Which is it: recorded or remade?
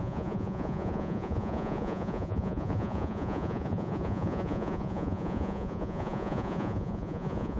remade